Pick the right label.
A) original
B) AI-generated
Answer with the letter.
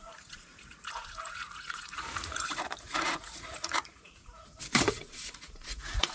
B